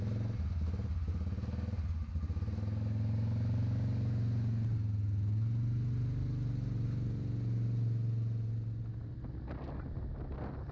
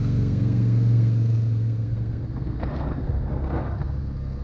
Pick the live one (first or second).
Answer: first